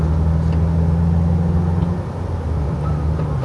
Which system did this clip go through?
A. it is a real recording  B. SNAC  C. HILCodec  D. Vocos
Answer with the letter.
A